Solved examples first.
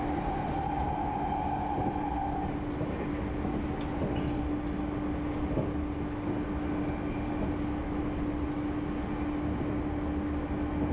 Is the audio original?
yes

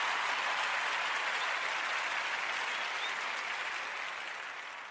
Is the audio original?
yes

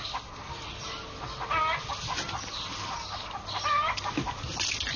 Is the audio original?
yes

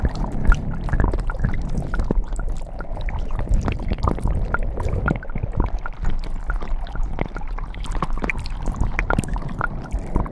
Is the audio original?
yes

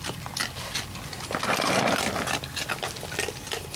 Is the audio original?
yes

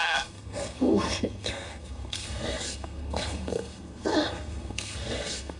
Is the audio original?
no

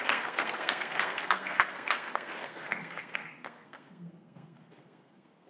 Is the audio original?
no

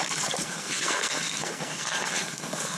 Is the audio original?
no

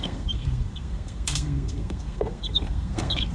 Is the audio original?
no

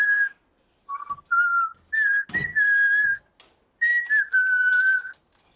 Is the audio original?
yes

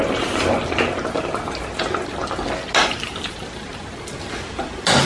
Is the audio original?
yes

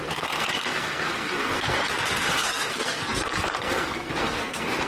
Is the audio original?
no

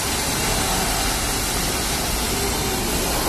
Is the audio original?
yes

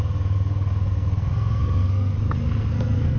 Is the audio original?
no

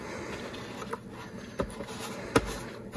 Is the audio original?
yes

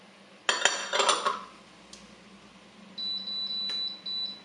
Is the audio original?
yes